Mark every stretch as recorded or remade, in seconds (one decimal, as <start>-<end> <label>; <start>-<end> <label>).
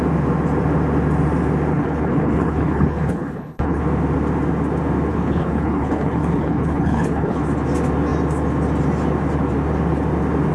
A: 0.0-1.7 recorded; 1.7-3.8 remade; 3.8-5.1 recorded; 5.1-7.4 remade; 7.4-10.5 recorded